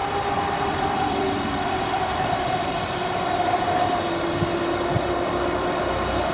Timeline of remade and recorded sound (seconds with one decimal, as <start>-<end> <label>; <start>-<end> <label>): 0.0-3.8 remade; 3.8-6.3 recorded